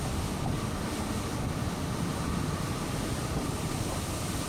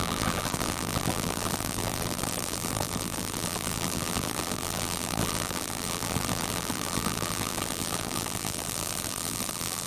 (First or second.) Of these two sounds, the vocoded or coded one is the second